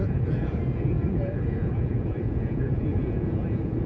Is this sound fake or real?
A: fake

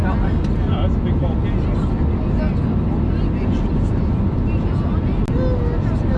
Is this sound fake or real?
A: real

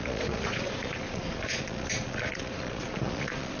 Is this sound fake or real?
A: fake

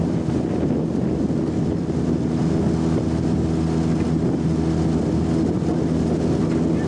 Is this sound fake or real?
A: real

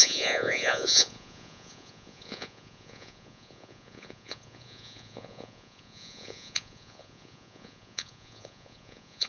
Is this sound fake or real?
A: fake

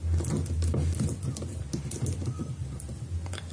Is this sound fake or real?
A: real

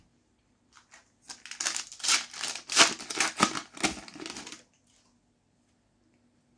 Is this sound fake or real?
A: real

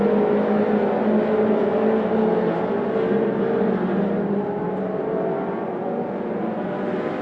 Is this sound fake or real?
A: real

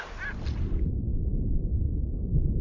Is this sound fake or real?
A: real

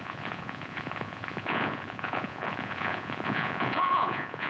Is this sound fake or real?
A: fake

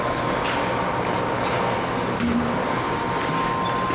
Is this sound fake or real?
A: real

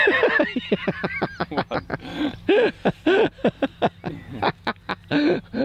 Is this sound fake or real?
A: real